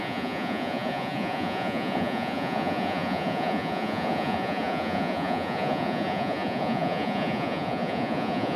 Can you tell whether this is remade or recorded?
remade